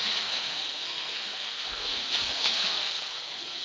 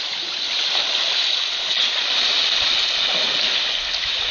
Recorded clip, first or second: second